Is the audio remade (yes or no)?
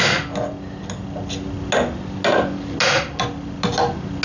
no